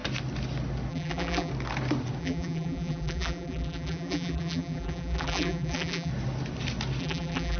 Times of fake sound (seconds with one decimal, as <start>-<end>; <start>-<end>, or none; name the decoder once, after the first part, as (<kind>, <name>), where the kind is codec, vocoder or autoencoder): 0.9-1.5 (vocoder, BigVGAN v2); 2.2-6.1; 7.0-7.6

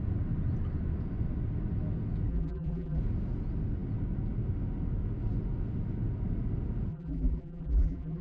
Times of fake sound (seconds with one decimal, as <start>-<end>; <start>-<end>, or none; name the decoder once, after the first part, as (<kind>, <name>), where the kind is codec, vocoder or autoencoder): 2.3-3.0 (vocoder, BigVGAN v2); 6.9-8.2

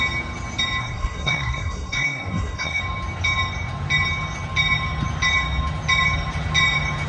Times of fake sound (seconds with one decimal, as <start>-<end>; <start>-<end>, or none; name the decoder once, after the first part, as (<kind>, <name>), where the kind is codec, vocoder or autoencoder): 0.8-2.8 (codec, SNAC)

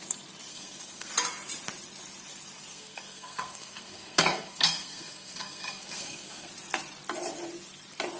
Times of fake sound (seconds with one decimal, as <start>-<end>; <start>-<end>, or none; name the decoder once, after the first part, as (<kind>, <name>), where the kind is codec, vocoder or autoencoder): 0.5-1.1 (codec, SNAC); 2.7-6.5